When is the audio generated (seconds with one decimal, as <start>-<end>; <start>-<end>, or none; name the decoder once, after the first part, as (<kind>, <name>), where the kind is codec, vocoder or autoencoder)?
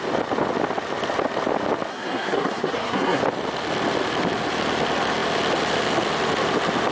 1.9-3.2 (codec, SNAC)